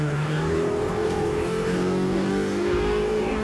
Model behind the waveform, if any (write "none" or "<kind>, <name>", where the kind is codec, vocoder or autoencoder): codec, DAC